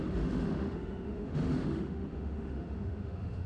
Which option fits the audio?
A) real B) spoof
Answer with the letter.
B